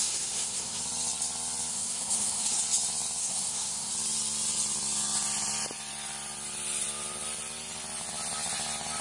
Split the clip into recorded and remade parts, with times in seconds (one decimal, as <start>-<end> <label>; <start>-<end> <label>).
0.0-0.8 remade; 0.8-1.7 recorded; 1.7-2.6 remade; 2.6-3.2 recorded; 3.2-3.9 remade; 3.9-9.0 recorded